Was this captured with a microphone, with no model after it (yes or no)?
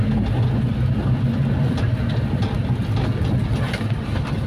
yes